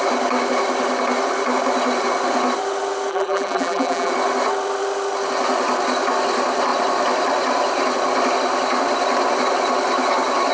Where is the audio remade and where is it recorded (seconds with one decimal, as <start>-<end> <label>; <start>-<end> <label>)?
0.0-3.1 recorded; 3.1-4.1 remade; 4.1-10.5 recorded